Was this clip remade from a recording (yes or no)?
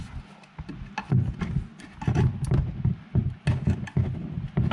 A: no